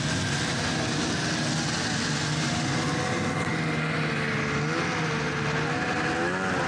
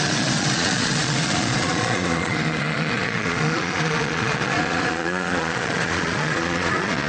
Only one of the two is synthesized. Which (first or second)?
second